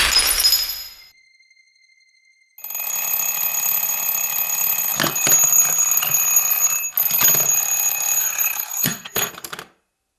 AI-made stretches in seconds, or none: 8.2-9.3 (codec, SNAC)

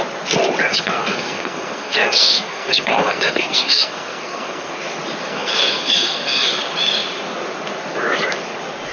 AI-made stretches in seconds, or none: 0.7-4.7 (codec, SNAC); 5.2-6.6

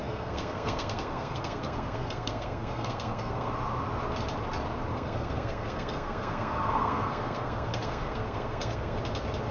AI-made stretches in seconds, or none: 0.0-3.5 (codec, SNAC); 4.9-9.0

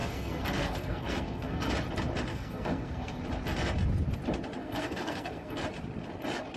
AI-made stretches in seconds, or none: 0.0-1.7 (codec, SNAC); 2.3-3.2; 4.6-5.6